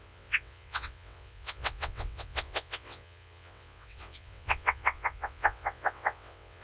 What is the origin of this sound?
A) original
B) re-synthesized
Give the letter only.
B